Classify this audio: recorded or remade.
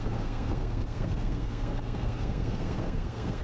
remade